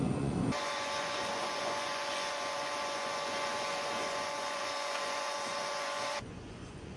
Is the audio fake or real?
fake